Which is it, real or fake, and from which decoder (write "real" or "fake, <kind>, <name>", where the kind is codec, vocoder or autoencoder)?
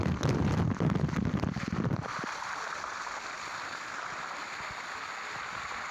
real